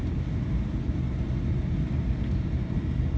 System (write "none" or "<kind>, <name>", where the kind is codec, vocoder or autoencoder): none